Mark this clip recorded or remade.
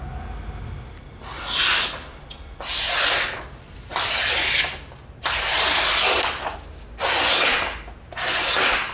recorded